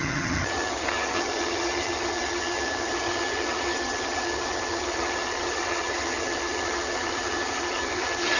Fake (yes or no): yes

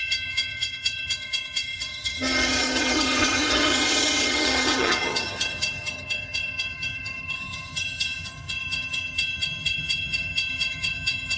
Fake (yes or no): yes